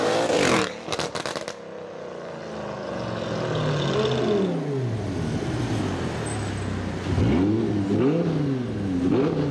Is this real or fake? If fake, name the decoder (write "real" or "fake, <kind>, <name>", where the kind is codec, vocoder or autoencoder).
real